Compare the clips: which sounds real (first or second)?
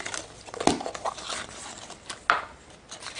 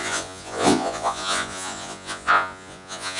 first